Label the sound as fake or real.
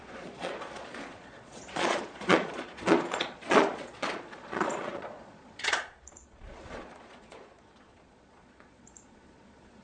fake